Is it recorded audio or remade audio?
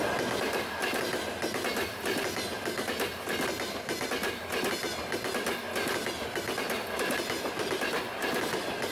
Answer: recorded